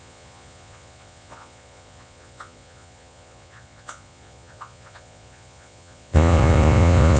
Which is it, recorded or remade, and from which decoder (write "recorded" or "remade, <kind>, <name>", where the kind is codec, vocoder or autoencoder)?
remade, vocoder, Vocos